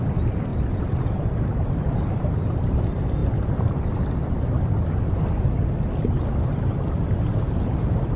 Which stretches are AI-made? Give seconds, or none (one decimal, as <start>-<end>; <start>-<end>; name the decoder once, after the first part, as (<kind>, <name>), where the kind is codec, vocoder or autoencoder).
none